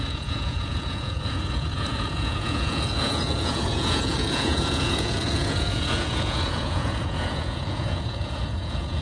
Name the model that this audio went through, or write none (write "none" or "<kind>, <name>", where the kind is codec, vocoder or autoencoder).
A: vocoder, Vocos